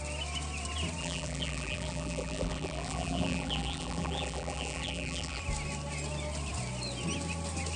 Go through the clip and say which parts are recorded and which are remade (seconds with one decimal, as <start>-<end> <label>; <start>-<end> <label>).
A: 0.0-1.0 recorded; 1.0-5.4 remade; 5.4-7.8 recorded